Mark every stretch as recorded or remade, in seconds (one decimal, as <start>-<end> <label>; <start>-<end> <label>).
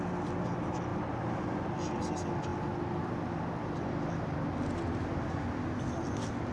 0.0-0.9 recorded; 0.9-2.0 remade; 2.0-6.5 recorded